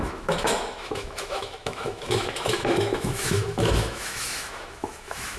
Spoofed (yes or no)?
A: yes